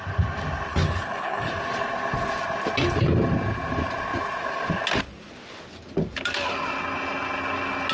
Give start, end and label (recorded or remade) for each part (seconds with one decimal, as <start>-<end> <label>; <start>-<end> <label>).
0.0-0.7 recorded; 0.7-1.5 remade; 1.5-7.9 recorded